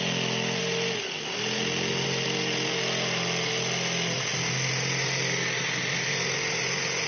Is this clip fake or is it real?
real